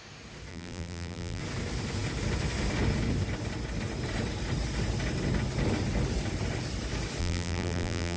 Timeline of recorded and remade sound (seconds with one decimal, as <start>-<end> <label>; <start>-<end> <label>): 0.0-0.5 recorded; 0.5-1.4 remade; 1.4-7.2 recorded; 7.2-8.2 remade